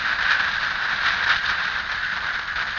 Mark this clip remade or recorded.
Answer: recorded